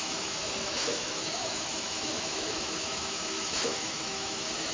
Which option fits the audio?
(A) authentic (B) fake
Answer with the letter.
B